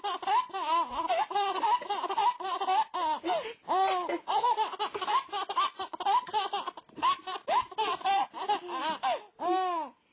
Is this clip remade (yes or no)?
no